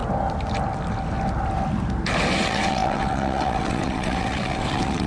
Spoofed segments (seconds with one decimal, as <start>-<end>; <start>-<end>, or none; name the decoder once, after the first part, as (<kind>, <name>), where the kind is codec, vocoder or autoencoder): 2.4-5.1 (vocoder, WaveNeXt)